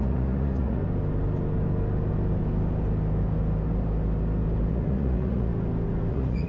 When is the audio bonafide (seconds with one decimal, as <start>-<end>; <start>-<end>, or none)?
0.8-4.7; 5.5-6.1